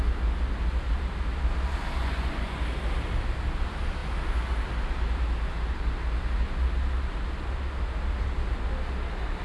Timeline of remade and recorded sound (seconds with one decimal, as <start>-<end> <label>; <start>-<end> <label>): 0.0-2.0 recorded; 2.0-2.6 remade; 2.6-9.4 recorded